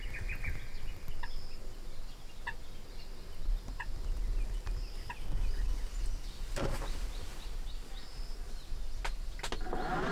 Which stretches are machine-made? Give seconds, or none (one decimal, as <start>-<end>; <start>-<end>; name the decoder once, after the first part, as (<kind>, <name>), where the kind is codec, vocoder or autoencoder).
none